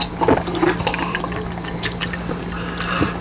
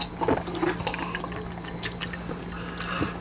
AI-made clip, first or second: first